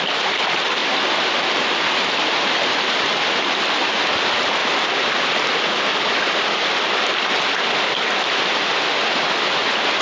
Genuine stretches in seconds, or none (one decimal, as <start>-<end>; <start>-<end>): 0.0-10.0